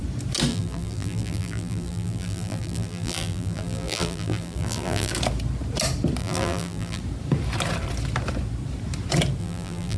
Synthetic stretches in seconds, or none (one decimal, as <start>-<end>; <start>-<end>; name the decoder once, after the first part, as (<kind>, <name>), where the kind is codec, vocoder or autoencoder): 0.5-5.1 (vocoder, BigVGAN v2); 6.2-7.0; 9.4-10.0

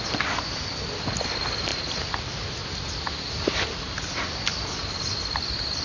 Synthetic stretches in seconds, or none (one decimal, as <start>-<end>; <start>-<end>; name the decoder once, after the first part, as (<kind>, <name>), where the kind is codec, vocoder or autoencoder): none

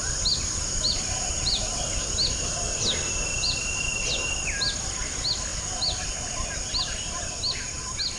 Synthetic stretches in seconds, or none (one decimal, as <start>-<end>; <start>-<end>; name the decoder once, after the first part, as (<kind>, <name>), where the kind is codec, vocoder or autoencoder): 0.6-1.6 (vocoder, BigVGAN v2); 2.7-4.2

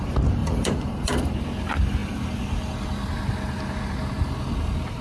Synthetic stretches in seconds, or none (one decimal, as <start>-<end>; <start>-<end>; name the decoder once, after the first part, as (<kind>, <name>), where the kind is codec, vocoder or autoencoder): 0.4-1.3 (vocoder, BigVGAN v2)